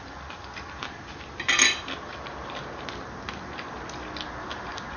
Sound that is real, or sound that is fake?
real